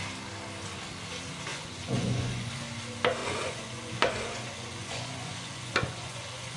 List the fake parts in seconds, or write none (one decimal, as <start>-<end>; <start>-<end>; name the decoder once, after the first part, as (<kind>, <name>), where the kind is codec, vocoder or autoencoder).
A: 1.5-2.5 (vocoder, Vocos); 3.2-6.6